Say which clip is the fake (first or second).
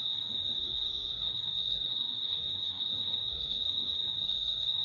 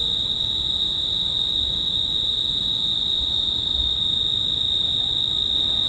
first